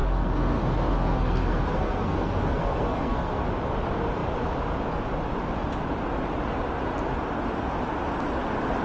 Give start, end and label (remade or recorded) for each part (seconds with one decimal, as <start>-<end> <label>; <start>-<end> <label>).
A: 0.0-3.5 remade; 3.5-8.8 recorded